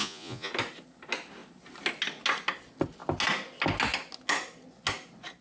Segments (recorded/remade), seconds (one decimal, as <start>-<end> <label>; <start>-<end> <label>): 0.0-0.5 remade; 0.5-5.4 recorded